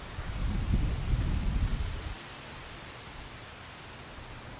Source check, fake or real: real